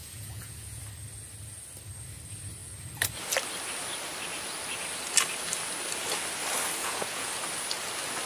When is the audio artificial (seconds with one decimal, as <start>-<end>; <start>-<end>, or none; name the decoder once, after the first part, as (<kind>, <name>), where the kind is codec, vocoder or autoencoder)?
0.0-0.8 (vocoder, Vocos); 6.8-7.3